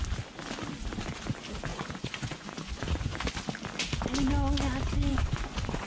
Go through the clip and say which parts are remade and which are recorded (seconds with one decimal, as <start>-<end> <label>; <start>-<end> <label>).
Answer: 0.0-1.7 recorded; 1.7-3.3 remade; 3.3-5.1 recorded; 5.1-5.9 remade